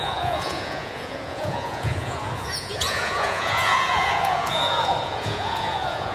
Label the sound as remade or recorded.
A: remade